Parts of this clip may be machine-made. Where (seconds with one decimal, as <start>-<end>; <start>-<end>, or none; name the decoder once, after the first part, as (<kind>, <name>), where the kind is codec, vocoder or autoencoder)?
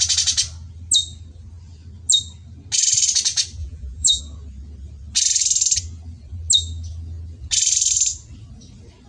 3.6-4.2 (vocoder, BigVGAN v2)